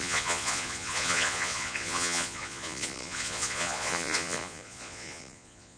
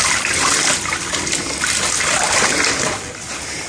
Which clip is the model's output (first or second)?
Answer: first